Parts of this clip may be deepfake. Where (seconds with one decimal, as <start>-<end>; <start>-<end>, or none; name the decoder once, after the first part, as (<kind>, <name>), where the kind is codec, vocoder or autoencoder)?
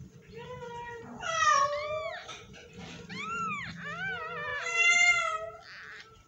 2.2-2.8 (vocoder, BigVGAN v2)